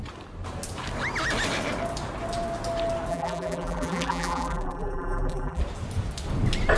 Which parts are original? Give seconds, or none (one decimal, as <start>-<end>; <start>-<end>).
0.0-3.1; 5.6-6.8